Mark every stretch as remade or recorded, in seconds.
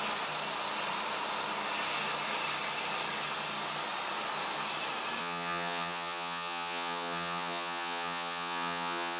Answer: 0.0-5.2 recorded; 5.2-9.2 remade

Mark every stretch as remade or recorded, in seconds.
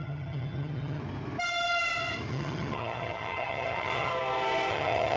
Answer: 0.0-1.0 remade; 1.0-2.3 recorded; 2.3-4.1 remade; 4.1-4.7 recorded; 4.7-5.2 remade